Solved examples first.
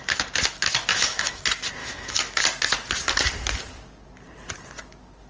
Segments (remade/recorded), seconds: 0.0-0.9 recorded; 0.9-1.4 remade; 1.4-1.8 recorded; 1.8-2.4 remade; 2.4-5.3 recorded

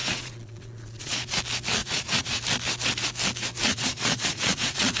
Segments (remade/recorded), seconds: 0.0-1.4 remade; 1.4-1.8 recorded; 1.8-2.4 remade; 2.4-3.6 recorded; 3.6-5.0 remade